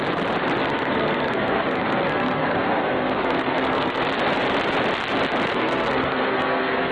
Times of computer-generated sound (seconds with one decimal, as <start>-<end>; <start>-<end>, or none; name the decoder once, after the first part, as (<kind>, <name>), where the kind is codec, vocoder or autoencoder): 0.6-4.0 (codec, SNAC); 5.5-6.9